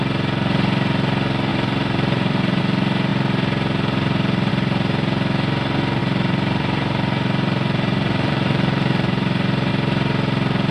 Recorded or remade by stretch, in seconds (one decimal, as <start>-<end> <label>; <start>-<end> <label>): 0.0-1.5 recorded; 1.5-2.6 remade; 2.6-6.0 recorded; 6.0-9.7 remade; 9.7-10.7 recorded